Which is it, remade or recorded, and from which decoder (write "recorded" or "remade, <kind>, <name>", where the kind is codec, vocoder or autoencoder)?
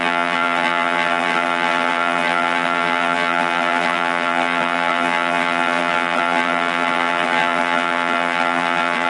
remade, vocoder, BigVGAN v2